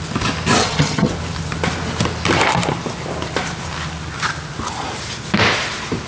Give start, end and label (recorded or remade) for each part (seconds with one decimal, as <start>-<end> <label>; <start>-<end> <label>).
0.0-0.6 recorded; 0.6-1.1 remade; 1.1-6.1 recorded